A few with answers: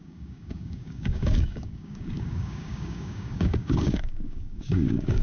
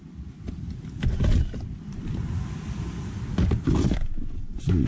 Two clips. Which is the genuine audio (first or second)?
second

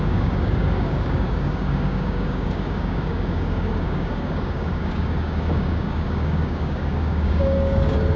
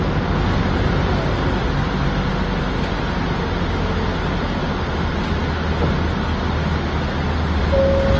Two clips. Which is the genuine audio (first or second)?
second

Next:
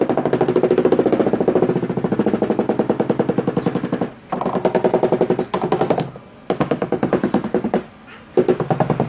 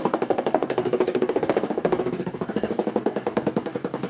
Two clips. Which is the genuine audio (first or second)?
first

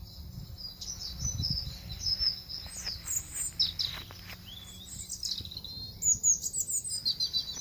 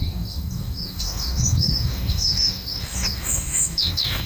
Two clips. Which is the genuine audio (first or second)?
first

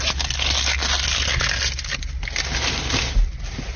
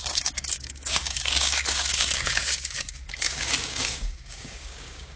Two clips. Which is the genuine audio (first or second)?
first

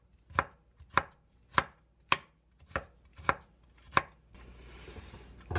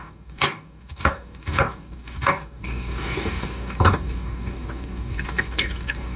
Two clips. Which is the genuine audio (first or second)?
first